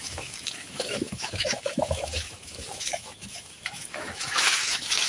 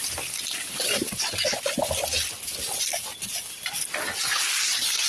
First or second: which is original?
second